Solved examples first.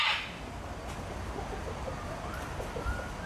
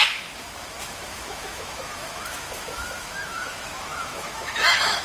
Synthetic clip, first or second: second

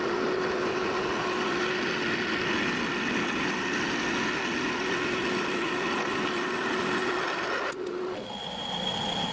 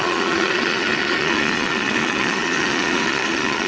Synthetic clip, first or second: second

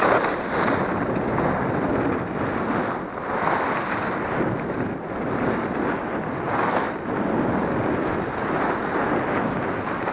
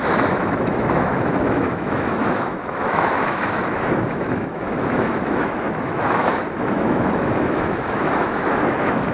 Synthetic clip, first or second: second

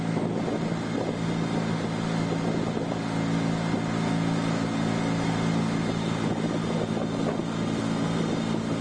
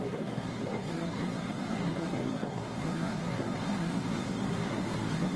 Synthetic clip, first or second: second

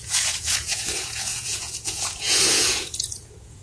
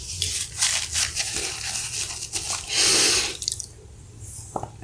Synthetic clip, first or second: first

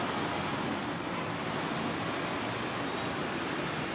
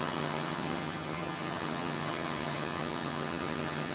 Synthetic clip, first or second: second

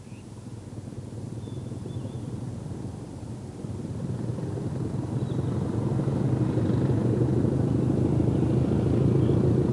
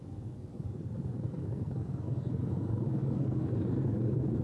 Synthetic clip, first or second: second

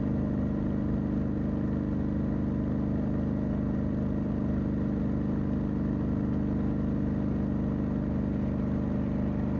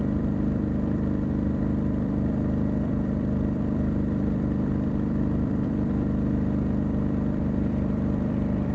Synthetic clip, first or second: second